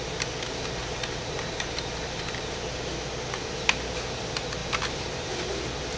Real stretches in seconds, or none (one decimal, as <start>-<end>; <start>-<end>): 0.0-0.8; 2.9-4.6; 5.5-6.0